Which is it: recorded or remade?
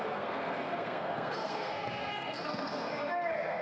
remade